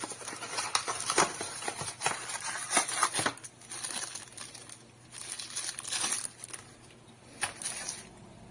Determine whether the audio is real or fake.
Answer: real